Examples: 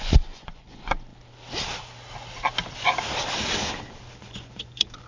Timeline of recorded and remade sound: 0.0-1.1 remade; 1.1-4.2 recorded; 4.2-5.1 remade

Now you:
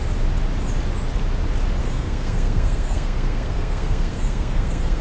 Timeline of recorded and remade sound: 0.0-1.8 recorded; 1.8-5.0 remade